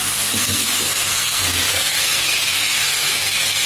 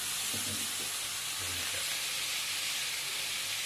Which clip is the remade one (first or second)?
first